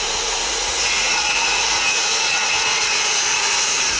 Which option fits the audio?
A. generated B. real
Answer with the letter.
A